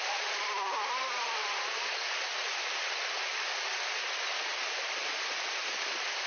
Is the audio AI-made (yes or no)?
no